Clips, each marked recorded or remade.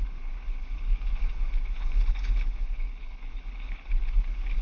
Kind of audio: remade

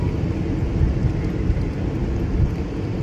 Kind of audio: recorded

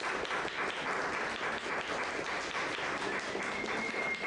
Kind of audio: recorded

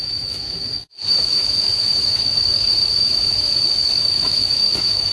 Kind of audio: remade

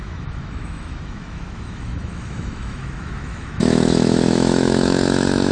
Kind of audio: remade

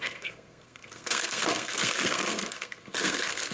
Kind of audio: remade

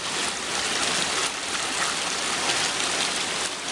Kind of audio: recorded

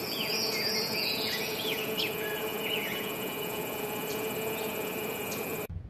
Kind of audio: remade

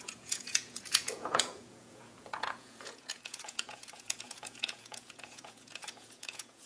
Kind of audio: remade